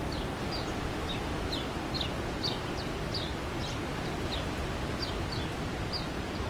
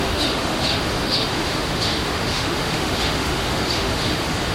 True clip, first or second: first